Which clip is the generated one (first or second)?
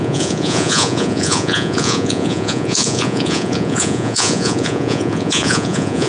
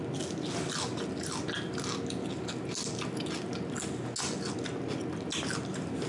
first